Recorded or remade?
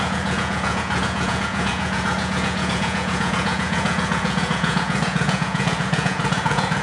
remade